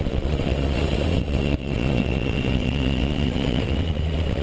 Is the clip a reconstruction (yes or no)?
yes